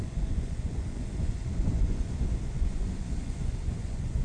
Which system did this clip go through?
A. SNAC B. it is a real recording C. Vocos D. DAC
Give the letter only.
C